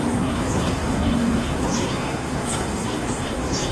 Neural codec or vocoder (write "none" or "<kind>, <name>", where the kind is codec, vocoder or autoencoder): codec, SNAC